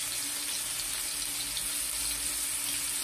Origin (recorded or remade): recorded